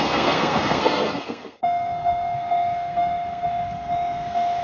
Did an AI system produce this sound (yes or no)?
yes